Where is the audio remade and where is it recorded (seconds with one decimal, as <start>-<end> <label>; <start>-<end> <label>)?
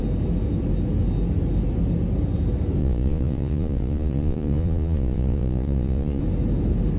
0.0-2.8 recorded; 2.8-6.2 remade; 6.2-7.0 recorded